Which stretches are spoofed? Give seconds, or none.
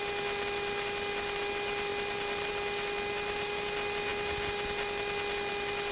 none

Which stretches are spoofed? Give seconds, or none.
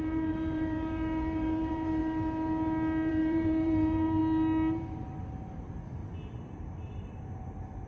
0.0-2.0; 3.1-4.2; 5.2-6.0; 6.6-7.9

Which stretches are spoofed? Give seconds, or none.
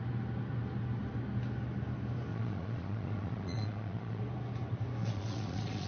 2.3-4.2; 5.0-5.9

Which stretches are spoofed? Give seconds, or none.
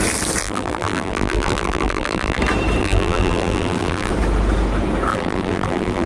0.4-2.4; 2.8-4.1; 5.1-6.1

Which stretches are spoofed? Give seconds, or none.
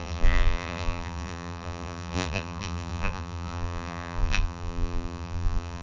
0.0-5.8